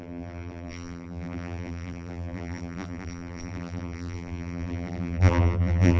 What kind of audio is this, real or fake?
fake